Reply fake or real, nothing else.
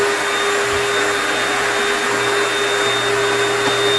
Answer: real